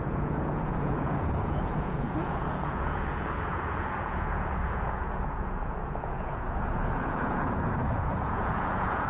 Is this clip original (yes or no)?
no